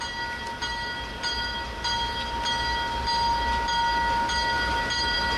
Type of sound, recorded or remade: recorded